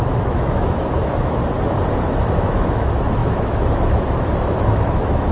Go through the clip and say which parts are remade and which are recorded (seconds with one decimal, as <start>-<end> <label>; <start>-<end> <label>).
0.0-1.4 remade; 1.4-2.0 recorded; 2.0-5.3 remade